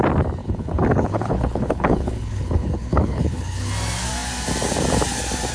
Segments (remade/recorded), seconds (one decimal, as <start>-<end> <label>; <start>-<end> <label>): 0.0-0.4 recorded; 0.4-3.7 remade; 3.7-5.5 recorded